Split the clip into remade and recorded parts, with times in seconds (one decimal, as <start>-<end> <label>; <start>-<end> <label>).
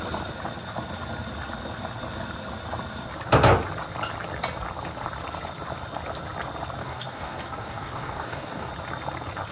0.0-6.8 recorded; 6.8-8.7 remade; 8.7-9.5 recorded